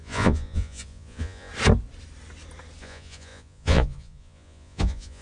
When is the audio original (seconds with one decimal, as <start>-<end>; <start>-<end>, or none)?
1.5-2.8